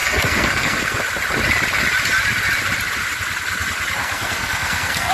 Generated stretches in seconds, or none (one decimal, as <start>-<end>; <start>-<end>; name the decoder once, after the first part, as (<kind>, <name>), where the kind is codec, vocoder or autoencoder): 0.0-1.0 (codec, SNAC); 4.0-5.1